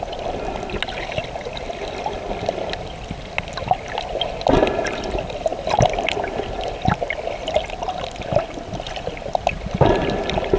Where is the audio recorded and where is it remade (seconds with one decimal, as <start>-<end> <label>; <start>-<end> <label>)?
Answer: 0.0-5.5 recorded; 5.5-10.6 remade